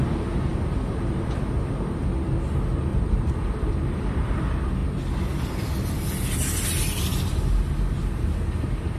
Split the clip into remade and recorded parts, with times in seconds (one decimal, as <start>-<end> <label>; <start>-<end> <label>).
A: 0.0-0.5 recorded; 0.5-1.4 remade; 1.4-2.9 recorded; 2.9-4.3 remade; 4.3-9.0 recorded

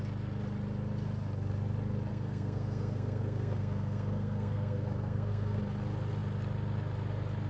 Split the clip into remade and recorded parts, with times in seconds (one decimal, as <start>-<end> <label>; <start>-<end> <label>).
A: 0.0-2.1 recorded; 2.1-5.6 remade; 5.6-7.5 recorded